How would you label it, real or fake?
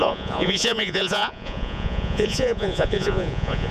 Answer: fake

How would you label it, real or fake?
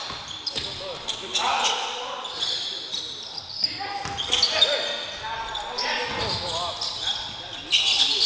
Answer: real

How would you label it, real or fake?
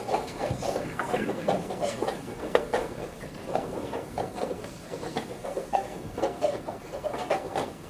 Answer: fake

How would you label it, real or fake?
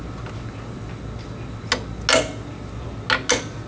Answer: real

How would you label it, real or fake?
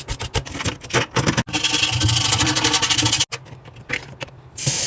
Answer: real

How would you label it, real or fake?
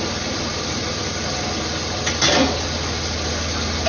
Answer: real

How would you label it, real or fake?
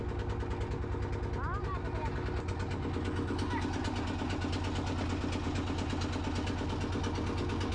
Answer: real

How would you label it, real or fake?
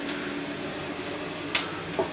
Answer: real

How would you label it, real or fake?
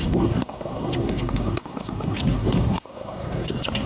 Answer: fake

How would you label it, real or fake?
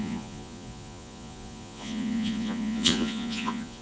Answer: fake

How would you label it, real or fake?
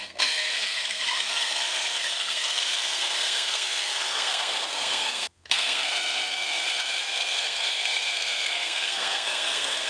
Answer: fake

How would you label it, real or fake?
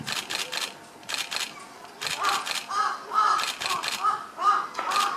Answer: real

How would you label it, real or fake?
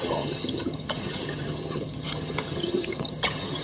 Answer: fake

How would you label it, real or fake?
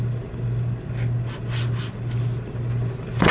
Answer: real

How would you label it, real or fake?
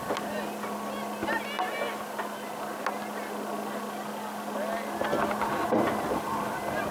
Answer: real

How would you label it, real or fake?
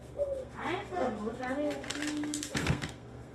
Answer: fake